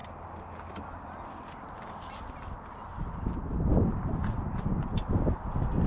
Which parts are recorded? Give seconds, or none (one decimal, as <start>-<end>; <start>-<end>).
0.0-5.9